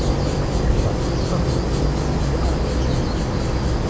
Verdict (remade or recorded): recorded